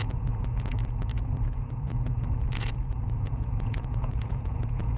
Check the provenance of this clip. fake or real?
fake